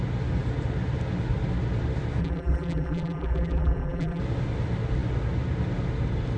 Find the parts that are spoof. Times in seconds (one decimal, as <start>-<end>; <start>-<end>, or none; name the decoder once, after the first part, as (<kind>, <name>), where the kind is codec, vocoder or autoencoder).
2.2-4.2 (vocoder, BigVGAN v2)